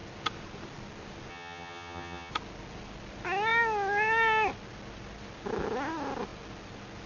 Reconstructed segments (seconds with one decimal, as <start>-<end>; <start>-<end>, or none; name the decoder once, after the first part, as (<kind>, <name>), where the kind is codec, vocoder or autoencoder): 1.3-2.3 (vocoder, HiFi-GAN)